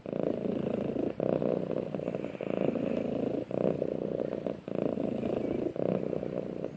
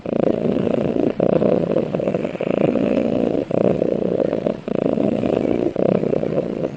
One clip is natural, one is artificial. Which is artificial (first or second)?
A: second